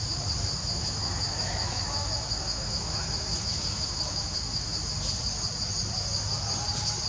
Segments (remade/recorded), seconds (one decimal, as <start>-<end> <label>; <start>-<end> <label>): 0.0-0.6 recorded; 0.6-4.9 remade; 4.9-7.1 recorded